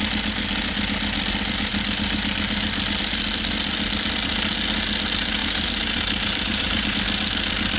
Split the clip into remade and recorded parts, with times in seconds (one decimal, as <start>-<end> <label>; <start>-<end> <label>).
0.0-5.4 recorded; 5.4-6.9 remade; 6.9-7.8 recorded